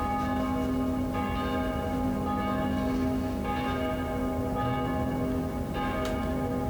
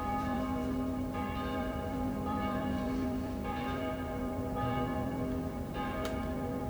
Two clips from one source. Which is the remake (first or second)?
second